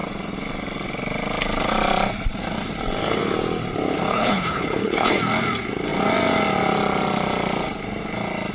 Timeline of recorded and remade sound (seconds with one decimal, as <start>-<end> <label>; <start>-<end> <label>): 0.0-4.1 recorded; 4.1-5.2 remade; 5.2-8.5 recorded